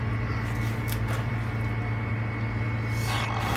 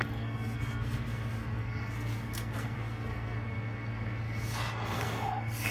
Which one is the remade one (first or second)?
second